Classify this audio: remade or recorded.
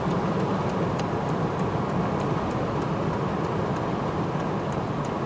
recorded